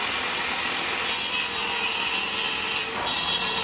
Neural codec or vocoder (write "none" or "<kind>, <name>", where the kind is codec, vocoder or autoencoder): none